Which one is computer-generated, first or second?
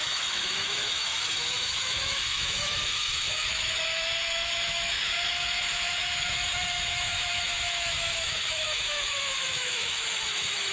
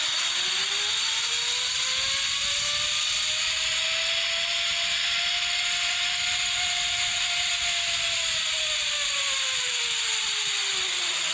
first